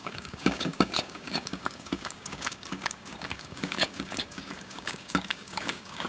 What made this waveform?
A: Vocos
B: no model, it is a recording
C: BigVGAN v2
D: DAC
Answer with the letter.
D